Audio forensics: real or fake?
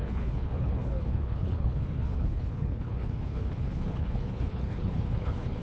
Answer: fake